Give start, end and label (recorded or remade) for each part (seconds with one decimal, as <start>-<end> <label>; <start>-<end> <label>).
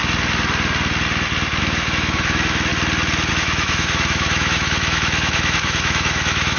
0.0-1.6 recorded; 1.6-2.7 remade; 2.7-3.3 recorded; 3.3-6.6 remade